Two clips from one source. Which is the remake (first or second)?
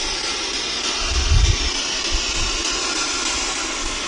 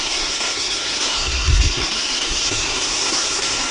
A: second